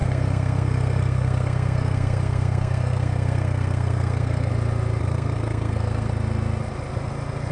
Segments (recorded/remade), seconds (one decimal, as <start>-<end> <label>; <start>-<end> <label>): 0.0-4.5 remade; 4.5-5.0 recorded; 5.0-6.1 remade; 6.1-7.5 recorded